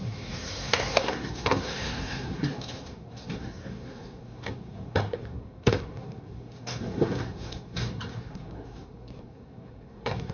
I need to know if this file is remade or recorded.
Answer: remade